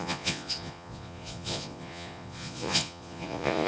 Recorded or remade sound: remade